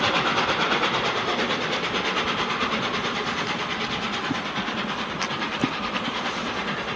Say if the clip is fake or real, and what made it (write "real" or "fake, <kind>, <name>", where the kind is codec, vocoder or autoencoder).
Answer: real